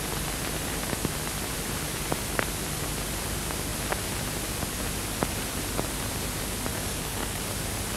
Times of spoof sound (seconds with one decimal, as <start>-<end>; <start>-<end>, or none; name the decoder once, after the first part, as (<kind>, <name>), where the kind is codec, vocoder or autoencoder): 6.7-7.4 (codec, DAC)